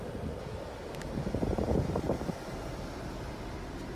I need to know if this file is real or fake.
real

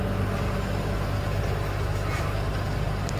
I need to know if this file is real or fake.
real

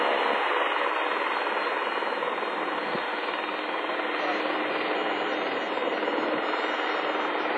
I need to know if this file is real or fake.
real